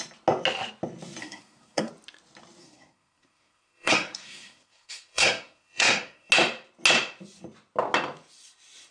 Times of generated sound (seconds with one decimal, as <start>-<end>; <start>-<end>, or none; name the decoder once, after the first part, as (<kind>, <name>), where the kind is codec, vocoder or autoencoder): 1.2-1.9 (codec, SNAC); 2.6-6.3